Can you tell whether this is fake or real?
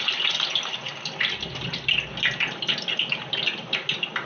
real